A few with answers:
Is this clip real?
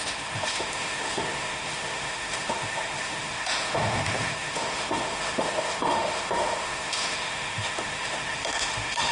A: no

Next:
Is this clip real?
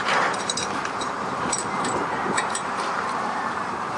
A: no